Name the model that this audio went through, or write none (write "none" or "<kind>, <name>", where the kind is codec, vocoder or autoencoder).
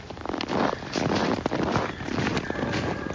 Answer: none